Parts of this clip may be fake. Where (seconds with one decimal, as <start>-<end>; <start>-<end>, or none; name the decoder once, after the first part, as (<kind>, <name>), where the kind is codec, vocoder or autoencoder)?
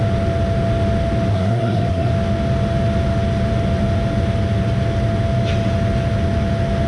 1.3-2.1 (codec, SNAC)